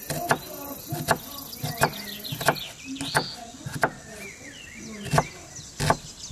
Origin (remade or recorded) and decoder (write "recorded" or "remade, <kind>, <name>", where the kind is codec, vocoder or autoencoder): recorded